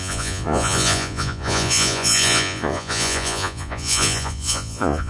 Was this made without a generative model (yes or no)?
no